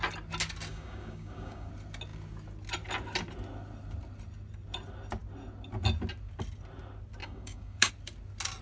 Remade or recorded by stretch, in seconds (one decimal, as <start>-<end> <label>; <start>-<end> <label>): 0.0-0.7 recorded; 0.7-1.7 remade; 1.7-7.2 recorded; 7.2-7.9 remade; 7.9-8.6 recorded